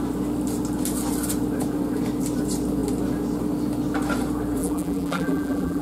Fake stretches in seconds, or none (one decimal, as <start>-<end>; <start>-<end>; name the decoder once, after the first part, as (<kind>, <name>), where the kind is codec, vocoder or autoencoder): 4.6-5.8 (vocoder, BigVGAN v2)

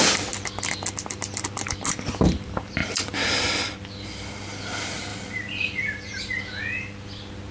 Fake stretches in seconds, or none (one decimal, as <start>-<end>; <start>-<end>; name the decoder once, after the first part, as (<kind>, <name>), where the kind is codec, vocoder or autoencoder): 5.1-6.4 (vocoder, BigVGAN v2)

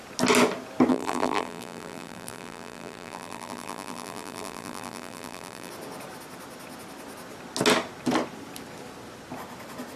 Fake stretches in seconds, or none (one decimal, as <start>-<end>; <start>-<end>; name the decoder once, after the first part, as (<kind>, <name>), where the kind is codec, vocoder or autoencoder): 0.9-5.7 (vocoder, BigVGAN v2)

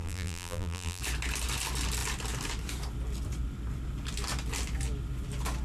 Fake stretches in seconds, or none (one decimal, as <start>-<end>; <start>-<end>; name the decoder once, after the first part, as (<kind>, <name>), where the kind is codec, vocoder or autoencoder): 0.0-1.0 (vocoder, BigVGAN v2)

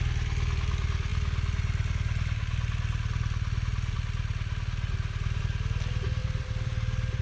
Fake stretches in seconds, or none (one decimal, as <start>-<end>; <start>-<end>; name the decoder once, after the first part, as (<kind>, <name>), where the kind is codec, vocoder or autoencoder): 6.2-7.2 (vocoder, BigVGAN v2)

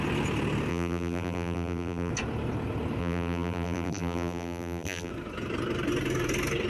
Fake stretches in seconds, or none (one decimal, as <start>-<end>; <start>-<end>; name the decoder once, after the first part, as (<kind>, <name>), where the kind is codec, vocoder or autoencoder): 0.7-2.1 (vocoder, BigVGAN v2); 3.0-5.1

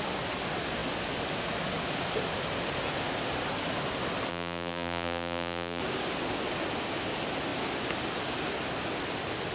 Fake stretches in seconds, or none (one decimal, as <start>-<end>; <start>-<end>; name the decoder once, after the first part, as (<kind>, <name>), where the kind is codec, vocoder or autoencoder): 4.3-5.8 (vocoder, BigVGAN v2)

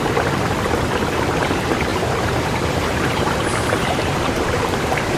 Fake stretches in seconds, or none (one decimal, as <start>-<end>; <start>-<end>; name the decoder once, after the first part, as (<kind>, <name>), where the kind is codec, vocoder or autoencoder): 1.9-3.4 (vocoder, BigVGAN v2); 3.8-5.2